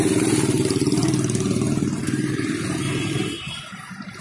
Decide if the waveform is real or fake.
fake